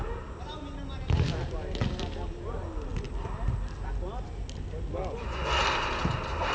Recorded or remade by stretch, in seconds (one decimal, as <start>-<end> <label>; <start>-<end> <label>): 0.0-6.5 recorded